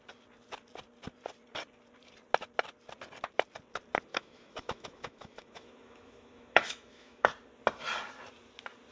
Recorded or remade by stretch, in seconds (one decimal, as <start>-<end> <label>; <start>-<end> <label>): 0.0-4.1 recorded; 4.1-7.3 remade; 7.3-8.9 recorded